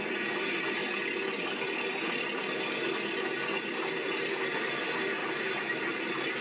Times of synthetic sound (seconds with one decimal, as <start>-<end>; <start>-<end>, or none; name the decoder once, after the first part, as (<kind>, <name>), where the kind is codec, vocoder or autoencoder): 5.2-6.4 (vocoder, BigVGAN v2)